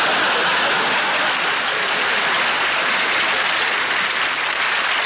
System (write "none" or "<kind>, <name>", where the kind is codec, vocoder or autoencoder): none